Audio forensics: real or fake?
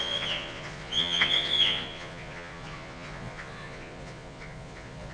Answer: fake